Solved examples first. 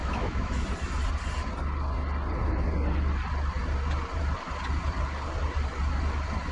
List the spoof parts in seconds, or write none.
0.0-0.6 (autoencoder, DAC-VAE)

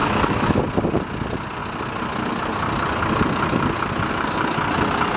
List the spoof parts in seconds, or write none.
0.0-0.6 (autoencoder, DAC-VAE)

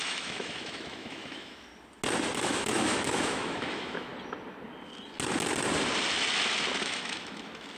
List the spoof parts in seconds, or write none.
0.0-1.7 (autoencoder, DAC-VAE); 2.3-4.1; 6.8-7.8

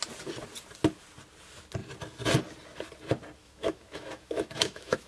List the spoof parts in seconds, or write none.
3.4-5.1 (autoencoder, DAC-VAE)

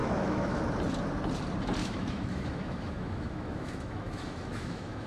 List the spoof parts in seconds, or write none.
0.0-0.6 (autoencoder, DAC-VAE); 1.8-5.1

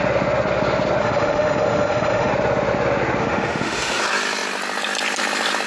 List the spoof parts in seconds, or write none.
1.0-2.3 (autoencoder, DAC-VAE); 3.2-4.0

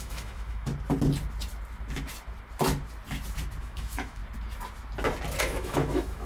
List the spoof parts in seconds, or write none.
0.0-0.7 (autoencoder, DAC-VAE); 3.6-4.2; 5.4-6.3

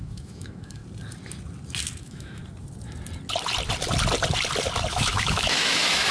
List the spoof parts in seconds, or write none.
0.0-0.8 (autoencoder, DAC-VAE); 2.0-2.4; 4.9-6.1